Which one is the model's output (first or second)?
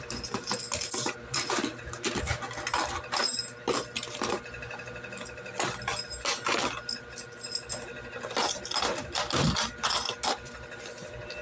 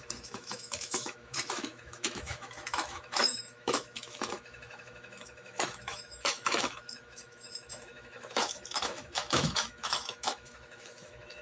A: second